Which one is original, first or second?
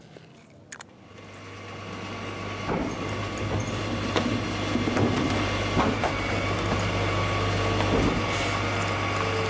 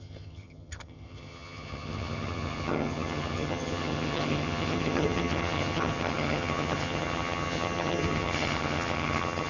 first